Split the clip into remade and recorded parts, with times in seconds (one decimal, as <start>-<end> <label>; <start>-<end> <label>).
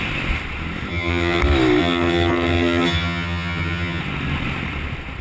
0.0-0.9 recorded; 0.9-1.4 remade; 1.4-1.8 recorded; 1.8-4.0 remade; 4.0-5.2 recorded